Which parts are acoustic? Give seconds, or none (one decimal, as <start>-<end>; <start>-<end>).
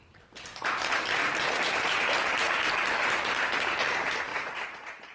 0.0-4.3